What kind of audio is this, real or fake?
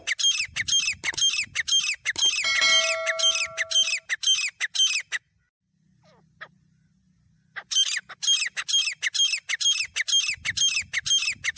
real